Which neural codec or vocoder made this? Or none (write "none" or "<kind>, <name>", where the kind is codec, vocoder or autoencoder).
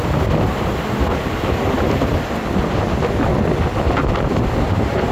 none